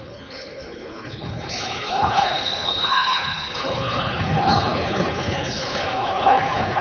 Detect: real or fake fake